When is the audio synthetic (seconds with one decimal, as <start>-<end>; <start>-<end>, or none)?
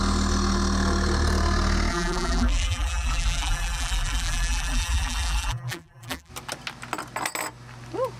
1.9-6.3